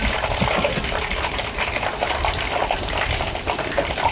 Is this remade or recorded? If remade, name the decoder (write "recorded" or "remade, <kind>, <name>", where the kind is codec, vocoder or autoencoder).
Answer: recorded